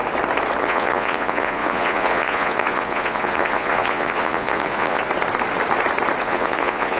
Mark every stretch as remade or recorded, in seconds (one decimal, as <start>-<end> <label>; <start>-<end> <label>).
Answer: 0.0-0.6 recorded; 0.6-5.0 remade; 5.0-6.2 recorded; 6.2-7.0 remade